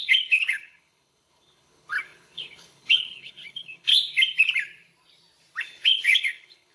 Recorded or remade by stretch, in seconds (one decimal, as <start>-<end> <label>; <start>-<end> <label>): 0.0-3.9 remade; 3.9-5.6 recorded; 5.6-6.7 remade